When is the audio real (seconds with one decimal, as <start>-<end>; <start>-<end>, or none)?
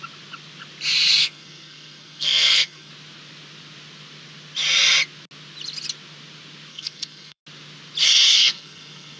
0.0-1.2; 2.9-6.7; 7.4-8.3